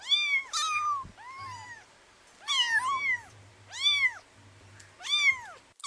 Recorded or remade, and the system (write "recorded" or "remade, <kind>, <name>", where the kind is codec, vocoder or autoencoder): recorded